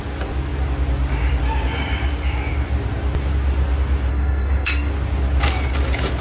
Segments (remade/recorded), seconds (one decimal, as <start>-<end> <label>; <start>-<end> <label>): 0.0-4.1 recorded; 4.1-4.9 remade; 4.9-6.2 recorded